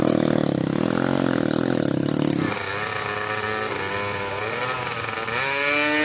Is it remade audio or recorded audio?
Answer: recorded